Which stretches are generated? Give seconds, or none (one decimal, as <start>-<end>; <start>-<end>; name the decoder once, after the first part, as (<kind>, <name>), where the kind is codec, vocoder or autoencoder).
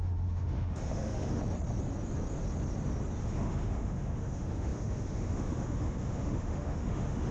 0.0-1.4 (autoencoder, DAC-VAE); 3.2-7.3